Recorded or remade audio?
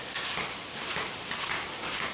recorded